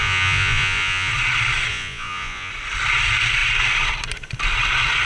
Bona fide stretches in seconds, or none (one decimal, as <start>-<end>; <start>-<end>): 1.1-1.7; 2.5-5.1